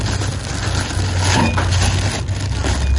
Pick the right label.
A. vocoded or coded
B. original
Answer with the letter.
B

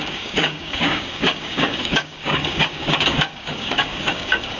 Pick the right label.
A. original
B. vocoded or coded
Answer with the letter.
B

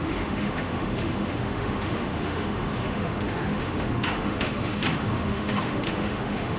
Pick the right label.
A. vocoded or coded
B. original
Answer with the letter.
A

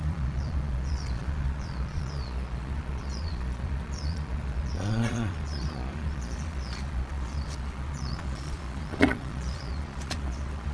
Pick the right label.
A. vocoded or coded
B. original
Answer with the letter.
A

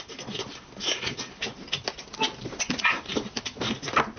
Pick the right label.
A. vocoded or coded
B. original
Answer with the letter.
B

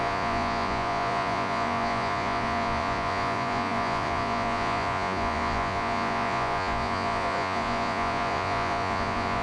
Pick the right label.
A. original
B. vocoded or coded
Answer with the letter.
B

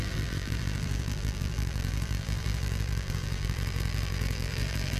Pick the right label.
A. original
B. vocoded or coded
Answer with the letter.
B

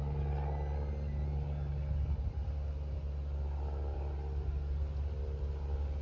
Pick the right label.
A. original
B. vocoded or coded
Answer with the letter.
A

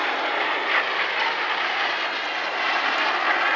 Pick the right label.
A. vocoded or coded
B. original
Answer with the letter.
B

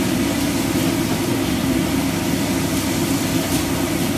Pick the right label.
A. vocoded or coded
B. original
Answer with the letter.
B